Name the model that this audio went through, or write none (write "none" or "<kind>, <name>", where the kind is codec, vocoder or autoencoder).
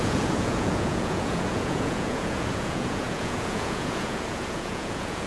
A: vocoder, Vocos